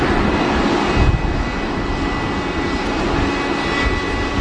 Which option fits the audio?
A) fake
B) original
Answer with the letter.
B